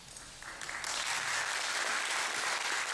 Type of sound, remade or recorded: recorded